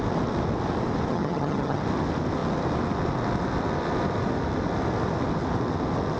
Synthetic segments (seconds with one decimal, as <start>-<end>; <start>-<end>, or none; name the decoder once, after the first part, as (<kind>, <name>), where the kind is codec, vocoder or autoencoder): 1.1-1.8 (vocoder, HiFi-GAN)

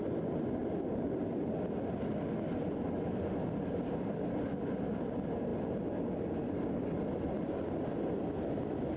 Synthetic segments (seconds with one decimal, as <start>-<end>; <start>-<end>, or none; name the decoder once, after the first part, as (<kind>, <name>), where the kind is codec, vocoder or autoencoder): none

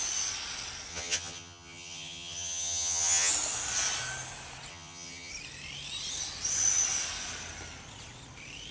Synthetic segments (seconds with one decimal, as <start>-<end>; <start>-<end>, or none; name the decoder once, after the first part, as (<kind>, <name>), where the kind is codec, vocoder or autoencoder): 0.9-3.3 (vocoder, HiFi-GAN); 4.7-5.3

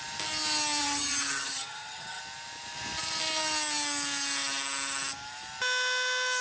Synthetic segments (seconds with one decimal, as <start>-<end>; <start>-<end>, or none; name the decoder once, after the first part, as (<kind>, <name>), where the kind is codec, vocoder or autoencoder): 0.8-2.2 (vocoder, HiFi-GAN)

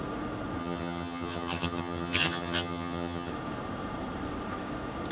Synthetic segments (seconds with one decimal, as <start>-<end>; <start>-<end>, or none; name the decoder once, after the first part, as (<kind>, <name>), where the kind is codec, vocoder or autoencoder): 0.6-3.3 (vocoder, HiFi-GAN)

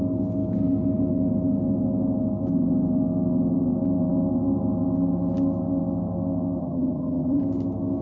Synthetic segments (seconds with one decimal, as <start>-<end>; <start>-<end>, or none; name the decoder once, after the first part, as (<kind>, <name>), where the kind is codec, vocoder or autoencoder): 6.6-7.4 (vocoder, HiFi-GAN)